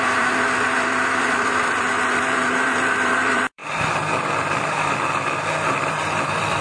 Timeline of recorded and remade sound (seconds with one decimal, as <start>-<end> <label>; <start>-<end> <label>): 0.0-6.6 remade